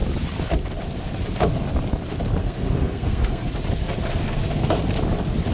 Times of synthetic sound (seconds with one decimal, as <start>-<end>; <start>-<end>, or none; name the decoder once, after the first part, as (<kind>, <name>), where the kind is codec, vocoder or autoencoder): 2.4-3.5 (codec, SNAC); 4.2-4.8